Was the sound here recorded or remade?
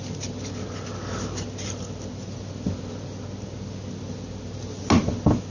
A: recorded